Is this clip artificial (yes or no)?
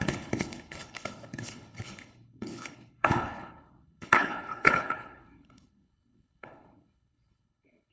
yes